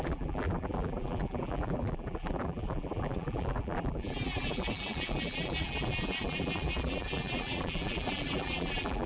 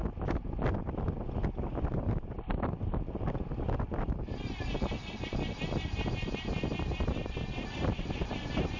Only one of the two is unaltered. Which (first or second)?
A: second